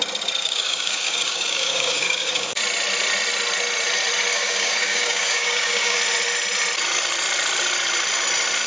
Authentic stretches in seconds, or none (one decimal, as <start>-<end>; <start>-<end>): 0.0-0.4; 2.6-4.3; 6.0-8.7